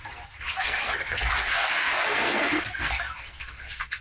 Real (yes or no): no